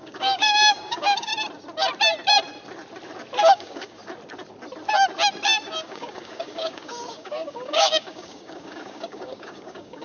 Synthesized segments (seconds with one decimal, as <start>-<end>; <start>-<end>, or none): 0.0-1.3; 3.4-4.0; 5.6-10.0